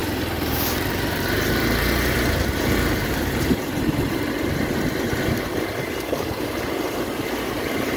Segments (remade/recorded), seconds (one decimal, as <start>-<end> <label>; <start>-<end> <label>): 0.0-8.0 remade